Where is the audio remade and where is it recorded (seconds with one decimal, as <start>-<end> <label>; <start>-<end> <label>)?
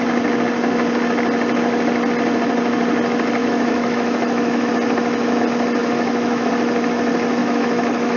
0.0-3.4 recorded; 3.4-4.7 remade; 4.7-5.8 recorded; 5.8-6.5 remade; 6.5-7.4 recorded; 7.4-8.2 remade